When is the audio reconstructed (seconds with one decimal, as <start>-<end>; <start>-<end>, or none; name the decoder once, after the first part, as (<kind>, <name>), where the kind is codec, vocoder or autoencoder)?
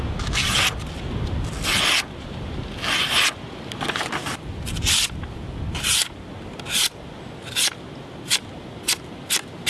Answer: none